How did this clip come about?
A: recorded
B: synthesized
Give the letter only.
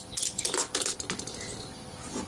A